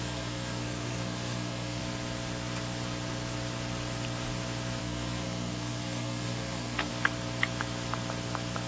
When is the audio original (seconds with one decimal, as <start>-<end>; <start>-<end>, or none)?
1.8-4.8; 6.9-8.7